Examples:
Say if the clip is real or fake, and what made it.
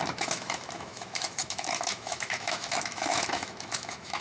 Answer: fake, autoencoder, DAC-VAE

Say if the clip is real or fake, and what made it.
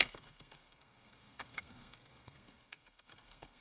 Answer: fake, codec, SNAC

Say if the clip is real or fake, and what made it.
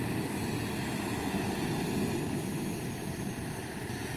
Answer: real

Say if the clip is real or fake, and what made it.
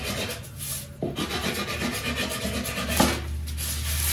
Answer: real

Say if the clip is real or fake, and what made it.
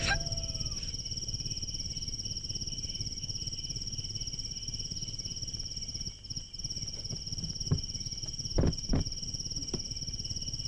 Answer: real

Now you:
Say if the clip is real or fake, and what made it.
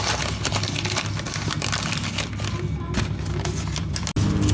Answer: real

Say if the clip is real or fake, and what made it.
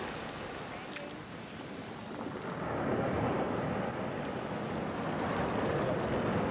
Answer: real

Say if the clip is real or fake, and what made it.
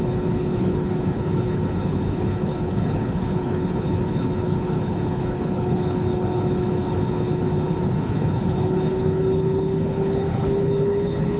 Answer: fake, codec, HILCodec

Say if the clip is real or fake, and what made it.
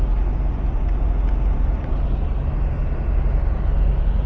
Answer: real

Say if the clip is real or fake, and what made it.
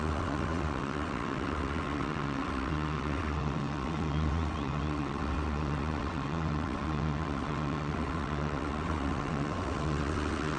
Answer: fake, vocoder, WaveNeXt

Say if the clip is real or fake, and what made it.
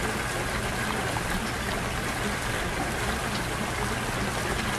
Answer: real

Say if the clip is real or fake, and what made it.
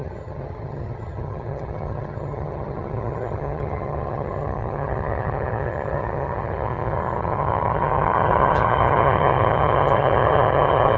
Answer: fake, vocoder, HiFi-GAN